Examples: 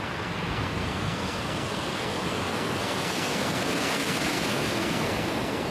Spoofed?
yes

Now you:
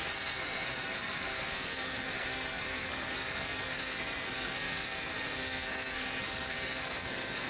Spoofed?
yes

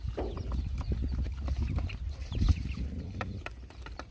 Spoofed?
no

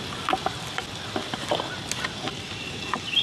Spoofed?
no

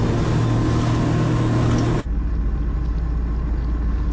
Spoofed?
no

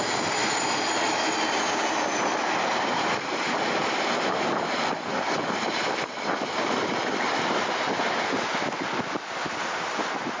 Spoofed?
no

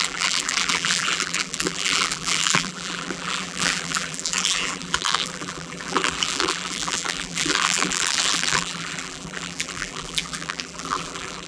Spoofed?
yes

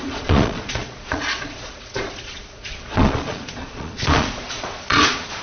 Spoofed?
yes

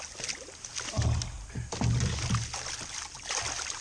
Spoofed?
no